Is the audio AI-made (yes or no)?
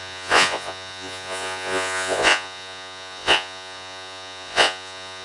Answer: yes